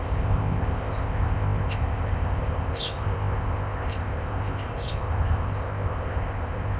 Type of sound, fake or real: fake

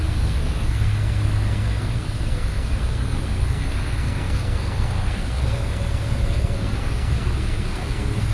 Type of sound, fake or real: fake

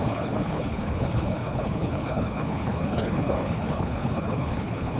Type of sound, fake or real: fake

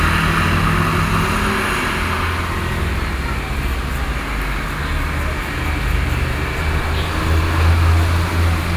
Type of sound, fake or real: real